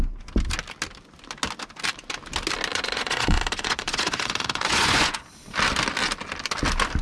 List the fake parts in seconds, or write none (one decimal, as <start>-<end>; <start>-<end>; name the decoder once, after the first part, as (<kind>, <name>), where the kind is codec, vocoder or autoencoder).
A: 2.7-5.1 (vocoder, Vocos)

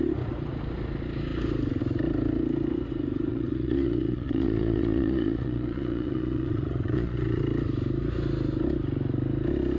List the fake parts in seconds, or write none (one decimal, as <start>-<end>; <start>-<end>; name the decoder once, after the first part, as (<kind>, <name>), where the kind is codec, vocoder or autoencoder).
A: 3.3-7.4 (vocoder, Vocos)

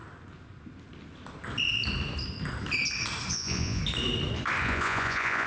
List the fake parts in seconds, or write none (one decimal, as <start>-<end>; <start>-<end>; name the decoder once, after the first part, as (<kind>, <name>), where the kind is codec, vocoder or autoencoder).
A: 3.3-3.8 (vocoder, Vocos); 4.6-5.5

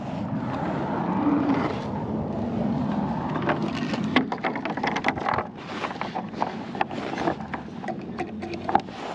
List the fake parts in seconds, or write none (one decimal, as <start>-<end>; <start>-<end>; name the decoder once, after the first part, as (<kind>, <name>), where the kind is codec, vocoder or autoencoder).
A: none

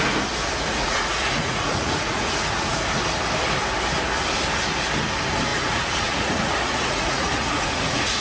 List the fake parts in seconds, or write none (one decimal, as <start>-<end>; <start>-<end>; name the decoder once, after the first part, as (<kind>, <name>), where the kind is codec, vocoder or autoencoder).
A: 0.8-2.8 (vocoder, Vocos); 5.5-8.2

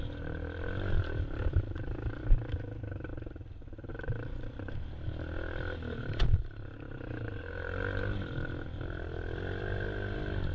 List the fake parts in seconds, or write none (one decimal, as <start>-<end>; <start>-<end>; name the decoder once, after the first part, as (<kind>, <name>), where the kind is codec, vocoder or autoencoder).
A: none